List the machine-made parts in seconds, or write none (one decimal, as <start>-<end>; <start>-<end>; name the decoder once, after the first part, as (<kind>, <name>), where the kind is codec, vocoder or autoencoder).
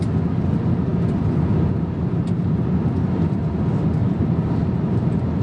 4.0-5.4 (vocoder, BigVGAN v2)